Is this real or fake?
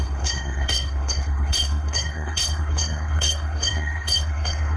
fake